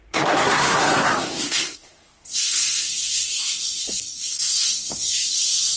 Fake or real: fake